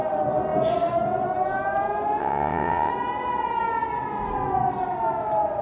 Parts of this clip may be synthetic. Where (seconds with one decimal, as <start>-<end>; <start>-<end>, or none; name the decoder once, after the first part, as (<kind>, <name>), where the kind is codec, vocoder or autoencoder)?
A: 2.2-2.9 (vocoder, WaveNeXt)